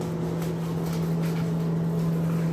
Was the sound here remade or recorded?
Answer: recorded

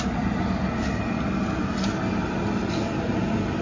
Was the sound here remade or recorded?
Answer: recorded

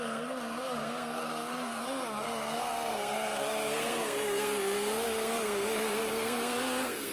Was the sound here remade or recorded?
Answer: remade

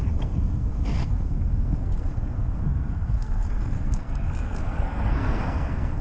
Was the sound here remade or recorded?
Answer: remade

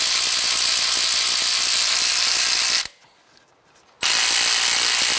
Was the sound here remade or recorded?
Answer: recorded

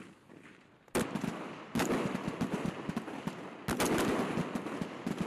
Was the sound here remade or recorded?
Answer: recorded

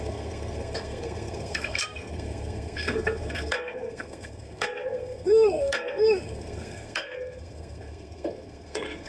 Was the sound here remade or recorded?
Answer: remade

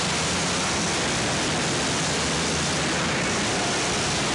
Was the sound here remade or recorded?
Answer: recorded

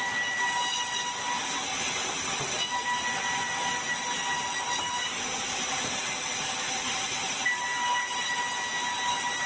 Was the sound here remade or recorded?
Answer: recorded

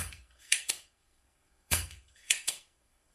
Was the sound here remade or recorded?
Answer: remade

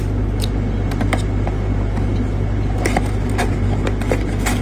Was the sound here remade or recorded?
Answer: recorded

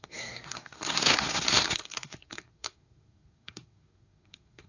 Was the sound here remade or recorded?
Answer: remade